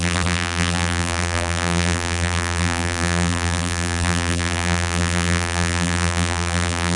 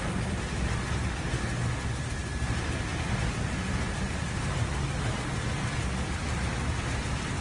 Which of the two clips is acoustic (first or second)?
second